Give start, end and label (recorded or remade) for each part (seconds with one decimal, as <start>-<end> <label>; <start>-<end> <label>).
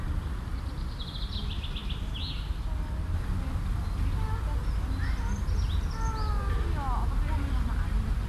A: 0.0-8.3 recorded